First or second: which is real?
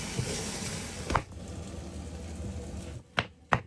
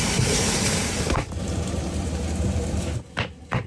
first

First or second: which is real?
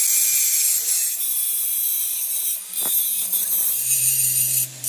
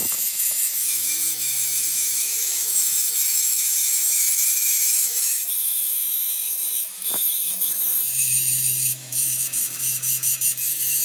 first